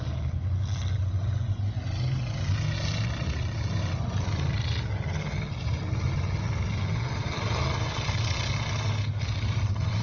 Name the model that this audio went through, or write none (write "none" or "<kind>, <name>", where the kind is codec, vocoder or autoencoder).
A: none